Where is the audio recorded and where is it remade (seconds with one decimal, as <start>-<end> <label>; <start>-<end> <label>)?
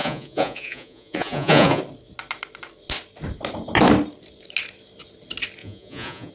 0.0-1.8 remade; 1.8-5.6 recorded; 5.6-6.3 remade